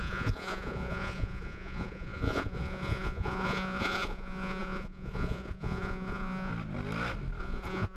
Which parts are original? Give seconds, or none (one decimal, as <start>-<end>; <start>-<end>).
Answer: 6.5-7.4